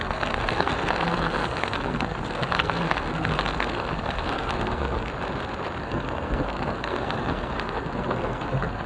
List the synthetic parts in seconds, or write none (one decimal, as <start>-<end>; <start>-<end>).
0.0-5.1; 5.8-8.9